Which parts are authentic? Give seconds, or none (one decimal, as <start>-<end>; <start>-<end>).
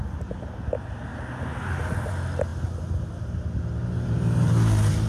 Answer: 0.0-3.8